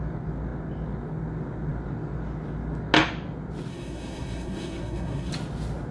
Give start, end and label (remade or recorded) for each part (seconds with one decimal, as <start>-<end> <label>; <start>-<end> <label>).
0.0-3.7 recorded; 3.7-5.3 remade; 5.3-5.9 recorded